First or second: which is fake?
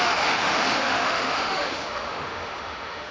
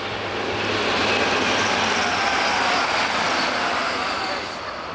first